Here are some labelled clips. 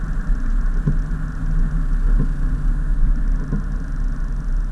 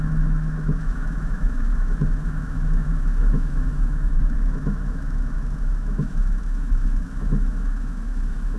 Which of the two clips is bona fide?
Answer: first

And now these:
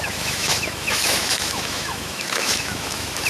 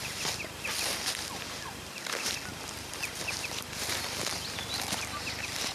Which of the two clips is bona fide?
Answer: second